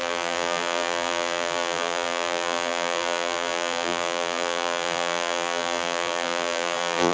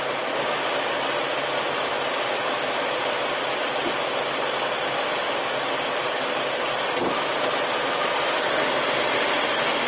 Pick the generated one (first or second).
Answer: first